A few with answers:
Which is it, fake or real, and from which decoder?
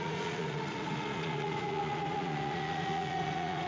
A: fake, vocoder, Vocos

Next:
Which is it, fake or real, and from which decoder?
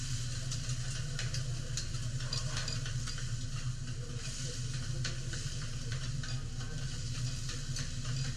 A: real